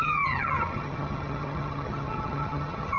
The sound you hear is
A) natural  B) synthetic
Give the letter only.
B